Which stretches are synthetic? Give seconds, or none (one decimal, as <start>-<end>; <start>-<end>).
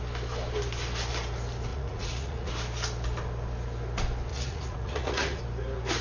1.7-2.5; 4.3-5.4